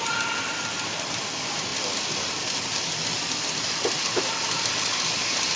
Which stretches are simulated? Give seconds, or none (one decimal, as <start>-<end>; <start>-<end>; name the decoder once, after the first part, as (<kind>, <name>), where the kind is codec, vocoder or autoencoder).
none